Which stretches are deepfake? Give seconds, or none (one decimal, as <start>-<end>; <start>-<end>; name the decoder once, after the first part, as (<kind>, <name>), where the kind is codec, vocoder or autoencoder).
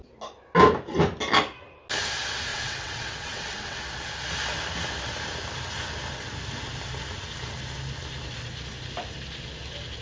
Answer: 2.5-3.8 (vocoder, WaveNeXt)